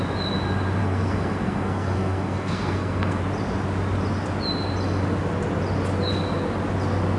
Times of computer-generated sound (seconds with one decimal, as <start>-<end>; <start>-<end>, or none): 0.8-3.2